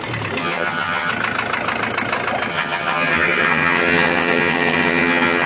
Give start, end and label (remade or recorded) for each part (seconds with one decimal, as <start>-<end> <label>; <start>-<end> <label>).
0.0-0.4 recorded; 0.4-1.1 remade; 1.1-2.5 recorded; 2.5-5.5 remade